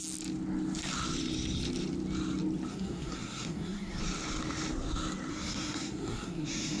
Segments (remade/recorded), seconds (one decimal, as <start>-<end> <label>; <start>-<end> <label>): 0.0-2.7 recorded; 2.7-4.0 remade; 4.0-5.3 recorded; 5.3-6.8 remade